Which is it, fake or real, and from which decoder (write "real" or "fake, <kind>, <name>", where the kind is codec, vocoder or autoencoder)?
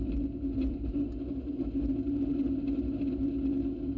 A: real